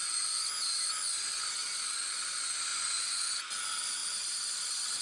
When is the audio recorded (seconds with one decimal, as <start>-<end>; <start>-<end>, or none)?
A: 0.6-2.7; 3.5-5.0